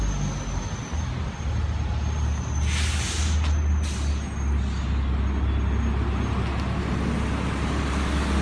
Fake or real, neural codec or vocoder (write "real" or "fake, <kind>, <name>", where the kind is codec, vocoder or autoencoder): real